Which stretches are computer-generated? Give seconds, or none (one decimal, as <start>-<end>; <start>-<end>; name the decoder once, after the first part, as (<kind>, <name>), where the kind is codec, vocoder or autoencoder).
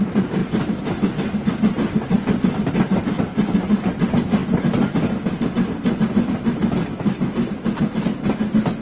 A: none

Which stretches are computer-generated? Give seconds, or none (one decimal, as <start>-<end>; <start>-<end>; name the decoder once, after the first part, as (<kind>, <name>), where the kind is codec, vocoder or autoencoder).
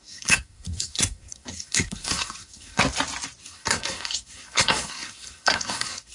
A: 0.0-2.8 (codec, SNAC); 3.4-6.1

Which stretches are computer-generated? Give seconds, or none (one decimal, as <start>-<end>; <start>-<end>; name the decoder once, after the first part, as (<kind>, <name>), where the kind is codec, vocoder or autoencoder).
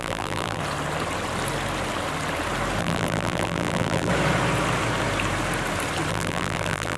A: 0.0-0.6 (vocoder, BigVGAN v2); 2.8-4.1; 6.1-7.0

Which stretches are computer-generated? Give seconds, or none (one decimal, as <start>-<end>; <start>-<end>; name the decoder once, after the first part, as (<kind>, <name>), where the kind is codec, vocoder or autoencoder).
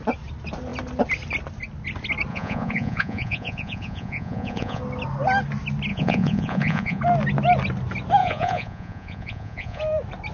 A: 2.3-4.8 (vocoder, Vocos); 5.9-7.0; 8.2-9.8